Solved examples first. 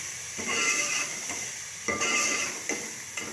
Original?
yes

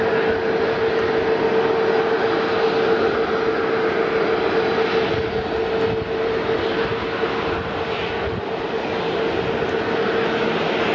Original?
yes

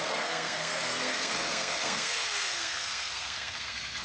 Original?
no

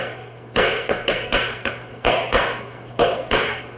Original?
no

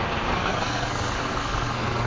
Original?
no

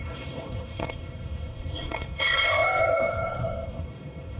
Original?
no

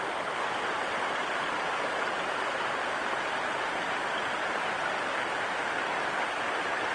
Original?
yes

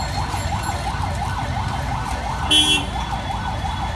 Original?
yes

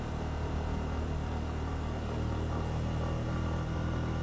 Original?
yes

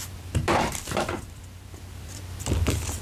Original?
no